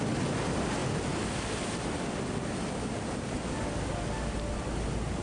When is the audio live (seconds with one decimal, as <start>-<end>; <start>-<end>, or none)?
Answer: 0.0-5.2